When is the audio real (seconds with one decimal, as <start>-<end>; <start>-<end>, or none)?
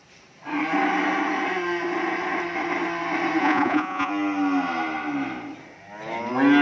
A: 0.0-3.4; 4.1-6.6